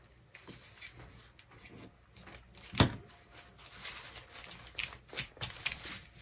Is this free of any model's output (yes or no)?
yes